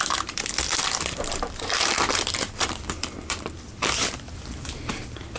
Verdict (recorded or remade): remade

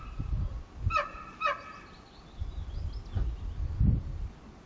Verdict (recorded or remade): recorded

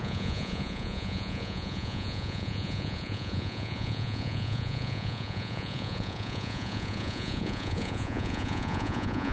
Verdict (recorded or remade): remade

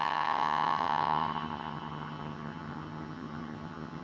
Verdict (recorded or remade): remade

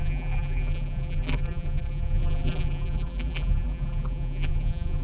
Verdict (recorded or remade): remade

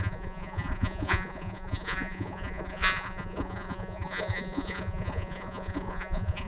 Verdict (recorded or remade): remade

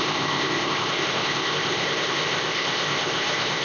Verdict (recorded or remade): remade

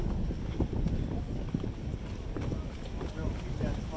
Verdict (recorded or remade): recorded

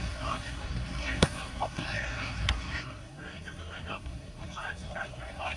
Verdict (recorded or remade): remade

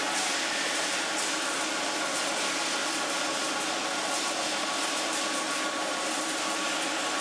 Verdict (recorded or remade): recorded